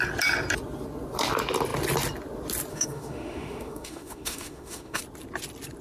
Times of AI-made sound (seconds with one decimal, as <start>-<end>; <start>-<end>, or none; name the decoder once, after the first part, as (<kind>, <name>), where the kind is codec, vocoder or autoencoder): 2.7-5.0 (autoencoder, DAC-VAE)